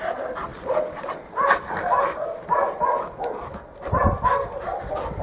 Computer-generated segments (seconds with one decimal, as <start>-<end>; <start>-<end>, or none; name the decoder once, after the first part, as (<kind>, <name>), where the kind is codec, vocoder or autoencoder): none